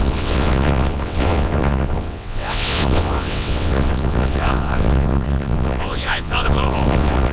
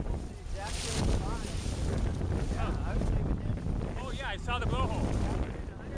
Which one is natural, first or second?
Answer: second